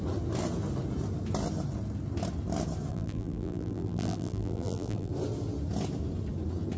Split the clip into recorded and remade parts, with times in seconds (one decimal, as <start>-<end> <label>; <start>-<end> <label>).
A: 0.0-2.9 recorded; 2.9-5.1 remade; 5.1-6.8 recorded